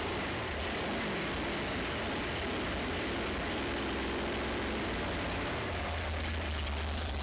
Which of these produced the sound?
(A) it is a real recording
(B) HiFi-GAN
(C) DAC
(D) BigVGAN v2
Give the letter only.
A